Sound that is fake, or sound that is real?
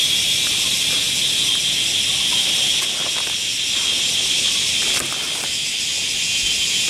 real